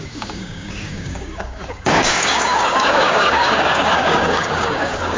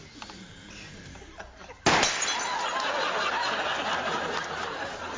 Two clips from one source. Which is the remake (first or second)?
first